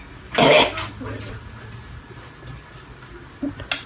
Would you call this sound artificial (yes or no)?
no